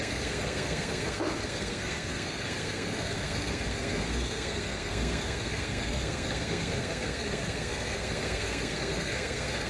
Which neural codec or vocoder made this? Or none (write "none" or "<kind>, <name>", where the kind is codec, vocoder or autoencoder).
codec, SNAC